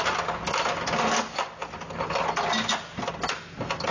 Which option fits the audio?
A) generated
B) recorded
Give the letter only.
B